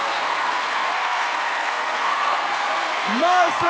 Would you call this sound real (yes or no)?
no